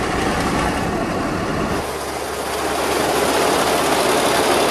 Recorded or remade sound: recorded